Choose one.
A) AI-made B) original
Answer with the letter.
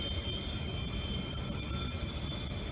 B